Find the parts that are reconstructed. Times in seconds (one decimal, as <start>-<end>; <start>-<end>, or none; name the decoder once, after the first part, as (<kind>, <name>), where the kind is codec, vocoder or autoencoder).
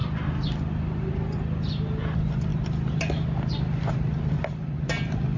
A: none